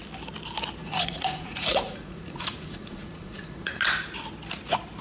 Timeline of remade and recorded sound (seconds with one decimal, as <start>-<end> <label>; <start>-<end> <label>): 0.0-0.8 recorded; 0.8-3.8 remade; 3.8-5.0 recorded